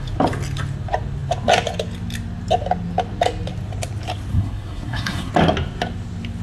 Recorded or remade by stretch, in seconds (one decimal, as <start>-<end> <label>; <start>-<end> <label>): 0.0-4.3 recorded; 4.3-5.3 remade; 5.3-6.4 recorded

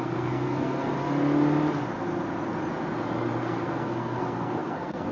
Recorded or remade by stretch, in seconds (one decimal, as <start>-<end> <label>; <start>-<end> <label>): 0.0-0.9 remade; 0.9-3.4 recorded; 3.4-5.1 remade